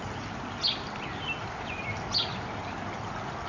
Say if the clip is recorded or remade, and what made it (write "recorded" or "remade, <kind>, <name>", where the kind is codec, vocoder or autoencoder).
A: recorded